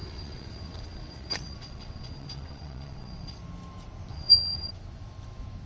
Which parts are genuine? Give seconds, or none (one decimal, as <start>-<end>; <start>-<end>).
3.4-4.1; 4.7-5.7